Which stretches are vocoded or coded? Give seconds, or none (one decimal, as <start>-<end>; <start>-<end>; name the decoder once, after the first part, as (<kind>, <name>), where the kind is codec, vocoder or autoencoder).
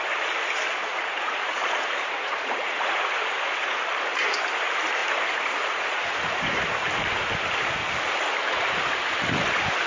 0.8-3.8 (vocoder, Vocos); 5.0-6.6